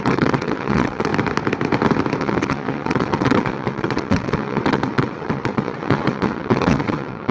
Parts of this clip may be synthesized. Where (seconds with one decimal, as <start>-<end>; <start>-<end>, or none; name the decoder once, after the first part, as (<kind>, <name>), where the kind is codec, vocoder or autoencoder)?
0.0-1.1 (vocoder, WaveNeXt); 2.2-7.3

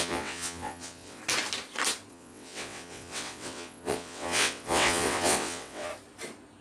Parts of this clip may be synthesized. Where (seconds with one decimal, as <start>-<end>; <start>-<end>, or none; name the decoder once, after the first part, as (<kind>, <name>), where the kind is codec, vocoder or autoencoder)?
0.0-1.2 (vocoder, WaveNeXt); 2.1-5.9

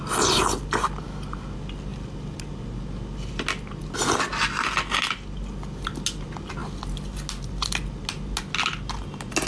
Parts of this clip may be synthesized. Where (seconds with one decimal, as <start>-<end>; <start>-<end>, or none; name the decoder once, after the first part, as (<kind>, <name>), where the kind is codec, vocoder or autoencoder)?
none

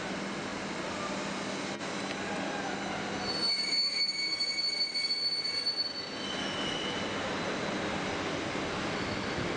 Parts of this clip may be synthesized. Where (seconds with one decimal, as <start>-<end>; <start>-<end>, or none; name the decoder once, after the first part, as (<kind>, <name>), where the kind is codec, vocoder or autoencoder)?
none

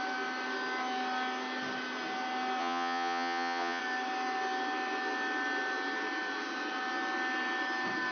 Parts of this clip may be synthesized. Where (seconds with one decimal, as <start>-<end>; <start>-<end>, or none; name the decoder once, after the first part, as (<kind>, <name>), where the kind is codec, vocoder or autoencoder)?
2.6-3.8 (vocoder, WaveNeXt)

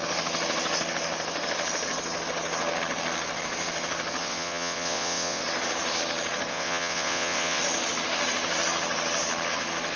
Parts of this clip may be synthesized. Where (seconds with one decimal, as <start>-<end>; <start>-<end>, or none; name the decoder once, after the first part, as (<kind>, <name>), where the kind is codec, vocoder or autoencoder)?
4.2-5.4 (vocoder, WaveNeXt); 6.5-7.6

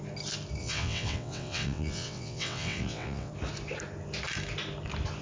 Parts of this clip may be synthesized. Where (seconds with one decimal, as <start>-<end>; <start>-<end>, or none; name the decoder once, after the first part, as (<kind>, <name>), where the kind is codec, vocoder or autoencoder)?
0.6-3.3 (vocoder, WaveNeXt)

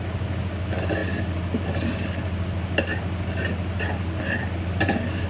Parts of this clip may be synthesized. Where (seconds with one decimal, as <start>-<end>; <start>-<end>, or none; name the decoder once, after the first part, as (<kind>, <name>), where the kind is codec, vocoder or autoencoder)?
none